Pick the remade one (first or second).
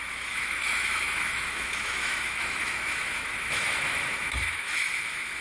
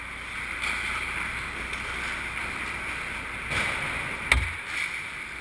first